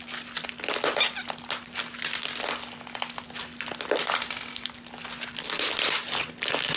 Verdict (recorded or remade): recorded